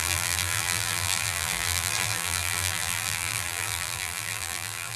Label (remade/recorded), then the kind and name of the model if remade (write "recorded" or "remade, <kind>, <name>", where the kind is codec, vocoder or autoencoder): remade, vocoder, BigVGAN v2